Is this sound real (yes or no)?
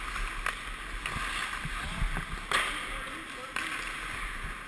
yes